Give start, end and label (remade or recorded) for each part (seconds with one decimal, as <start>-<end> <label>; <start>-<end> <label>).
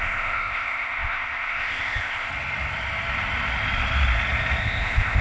0.0-2.3 remade; 2.3-4.6 recorded; 4.6-5.2 remade